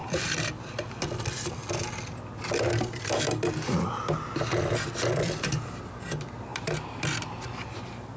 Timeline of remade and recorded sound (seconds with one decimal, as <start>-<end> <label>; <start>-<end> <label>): 0.0-1.6 remade; 1.6-4.4 recorded; 4.4-8.2 remade